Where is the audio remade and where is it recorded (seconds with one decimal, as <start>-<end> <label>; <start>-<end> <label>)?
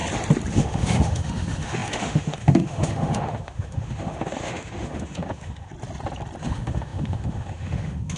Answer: 0.0-0.5 recorded; 0.5-5.7 remade; 5.7-6.4 recorded; 6.4-8.2 remade